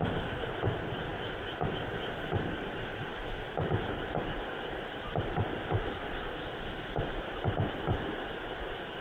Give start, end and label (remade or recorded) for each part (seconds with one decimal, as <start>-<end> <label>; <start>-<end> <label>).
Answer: 0.0-9.0 recorded